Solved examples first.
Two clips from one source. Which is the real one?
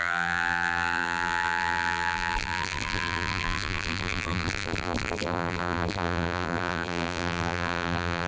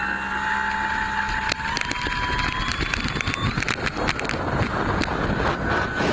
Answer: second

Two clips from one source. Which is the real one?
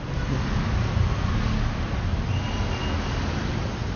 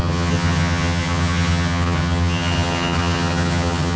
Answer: first